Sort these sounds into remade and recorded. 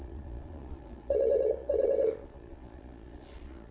remade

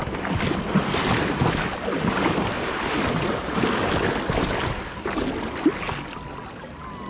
recorded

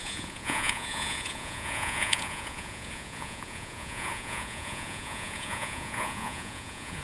remade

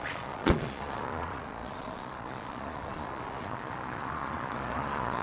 remade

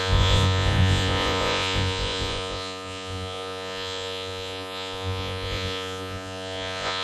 remade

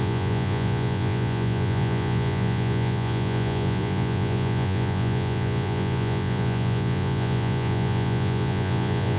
remade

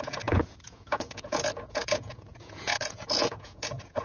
remade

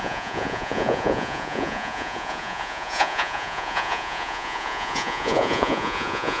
remade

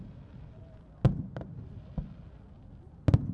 recorded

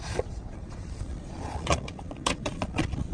remade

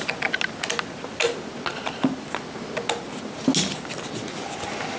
recorded